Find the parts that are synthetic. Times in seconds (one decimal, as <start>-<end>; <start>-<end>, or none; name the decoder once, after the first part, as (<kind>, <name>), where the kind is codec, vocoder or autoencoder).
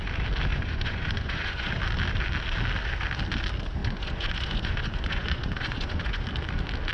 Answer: 0.5-1.7 (vocoder, Vocos); 3.8-6.2